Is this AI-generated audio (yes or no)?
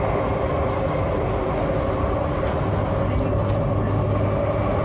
no